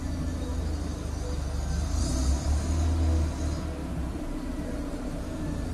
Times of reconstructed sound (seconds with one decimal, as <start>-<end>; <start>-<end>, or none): 3.8-5.7